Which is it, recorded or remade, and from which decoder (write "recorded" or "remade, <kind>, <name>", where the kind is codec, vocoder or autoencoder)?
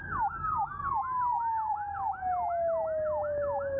recorded